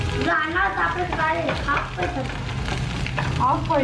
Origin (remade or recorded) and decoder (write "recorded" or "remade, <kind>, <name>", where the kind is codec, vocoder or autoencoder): recorded